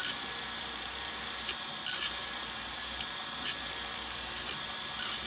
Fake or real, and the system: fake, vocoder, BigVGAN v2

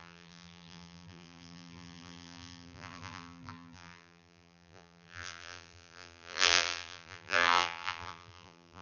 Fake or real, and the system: fake, vocoder, BigVGAN v2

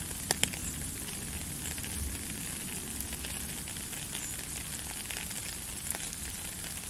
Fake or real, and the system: real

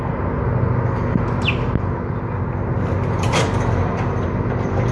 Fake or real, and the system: real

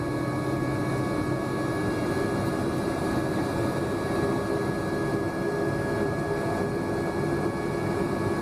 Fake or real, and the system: real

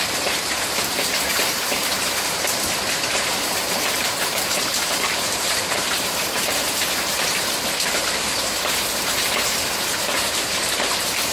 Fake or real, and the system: fake, vocoder, BigVGAN v2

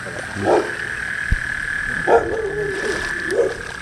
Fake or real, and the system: real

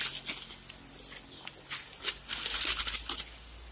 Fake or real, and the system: real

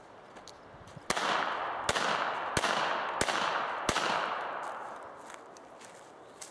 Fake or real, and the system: real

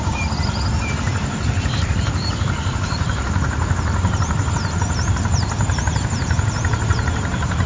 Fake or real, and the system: fake, vocoder, BigVGAN v2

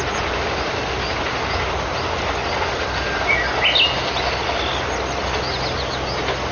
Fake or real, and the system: real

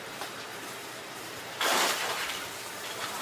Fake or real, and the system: fake, vocoder, BigVGAN v2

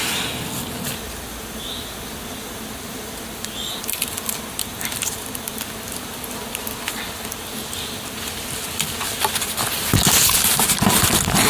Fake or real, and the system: real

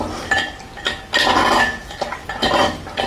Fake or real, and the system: real